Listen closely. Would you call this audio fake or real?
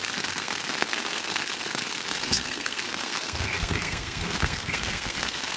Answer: fake